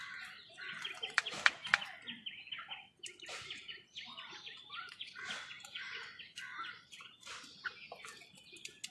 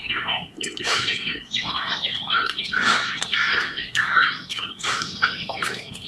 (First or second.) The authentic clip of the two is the first